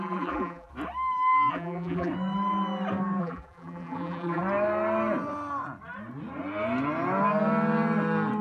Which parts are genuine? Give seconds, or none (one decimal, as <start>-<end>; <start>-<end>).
0.7-1.5; 2.1-3.2; 4.4-8.4